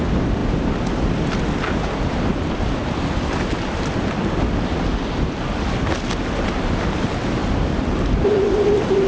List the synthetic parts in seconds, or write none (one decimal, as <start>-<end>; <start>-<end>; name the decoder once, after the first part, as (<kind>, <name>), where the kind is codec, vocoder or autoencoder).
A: none